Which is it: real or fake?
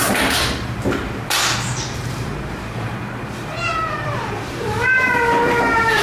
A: fake